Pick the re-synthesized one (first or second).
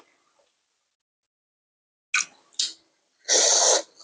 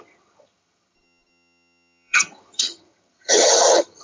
second